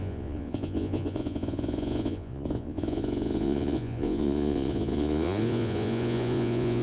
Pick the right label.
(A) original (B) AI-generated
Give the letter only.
B